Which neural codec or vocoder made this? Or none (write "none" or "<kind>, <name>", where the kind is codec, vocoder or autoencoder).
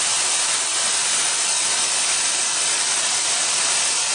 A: vocoder, BigVGAN v2